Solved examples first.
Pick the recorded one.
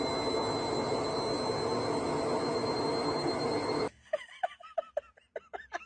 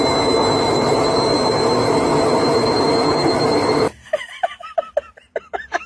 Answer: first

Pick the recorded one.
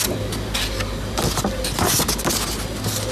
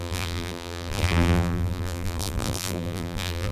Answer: first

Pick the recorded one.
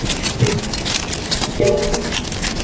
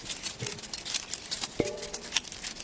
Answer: first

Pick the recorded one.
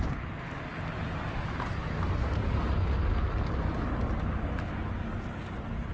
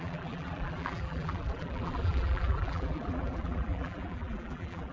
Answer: first